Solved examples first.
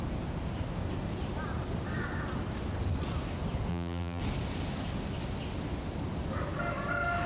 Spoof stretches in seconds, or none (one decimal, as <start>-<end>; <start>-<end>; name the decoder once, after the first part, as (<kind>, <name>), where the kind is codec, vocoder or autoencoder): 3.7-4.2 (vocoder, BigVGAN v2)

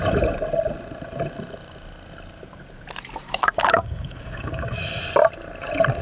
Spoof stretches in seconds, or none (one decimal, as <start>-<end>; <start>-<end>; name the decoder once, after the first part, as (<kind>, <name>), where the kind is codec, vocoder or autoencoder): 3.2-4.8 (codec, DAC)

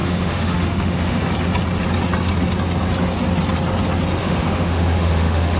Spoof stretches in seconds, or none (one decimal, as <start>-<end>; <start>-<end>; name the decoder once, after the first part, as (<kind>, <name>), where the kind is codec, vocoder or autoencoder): 0.0-1.2 (autoencoder, DAC-VAE); 4.2-5.6